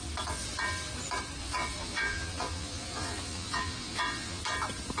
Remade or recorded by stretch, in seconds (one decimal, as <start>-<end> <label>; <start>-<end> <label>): 0.0-1.4 recorded; 1.4-4.4 remade; 4.4-5.0 recorded